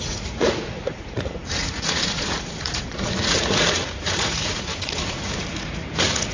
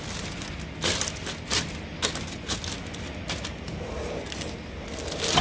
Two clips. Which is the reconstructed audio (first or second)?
first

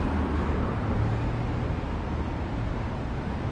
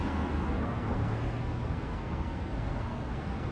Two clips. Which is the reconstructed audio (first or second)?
second